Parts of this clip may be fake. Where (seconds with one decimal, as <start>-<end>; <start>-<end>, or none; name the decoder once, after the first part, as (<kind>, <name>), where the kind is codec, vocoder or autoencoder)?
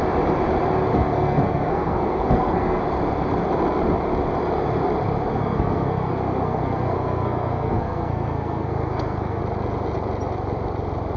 0.9-2.8 (codec, SNAC); 5.3-9.4